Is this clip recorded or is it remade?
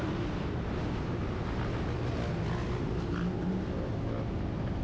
recorded